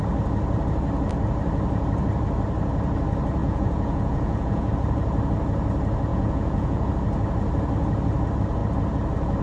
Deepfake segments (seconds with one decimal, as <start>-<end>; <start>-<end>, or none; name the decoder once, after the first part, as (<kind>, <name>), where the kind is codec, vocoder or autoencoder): 3.4-4.7 (vocoder, Vocos); 6.1-6.9

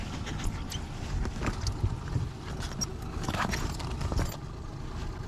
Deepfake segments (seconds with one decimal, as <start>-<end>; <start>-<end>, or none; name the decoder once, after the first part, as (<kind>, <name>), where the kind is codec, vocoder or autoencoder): 2.9-3.5 (codec, DAC)

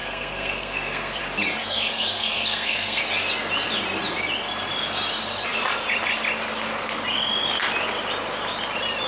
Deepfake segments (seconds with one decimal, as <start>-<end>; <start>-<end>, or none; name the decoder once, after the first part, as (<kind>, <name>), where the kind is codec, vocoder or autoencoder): 0.0-1.2 (codec, SNAC); 1.6-3.0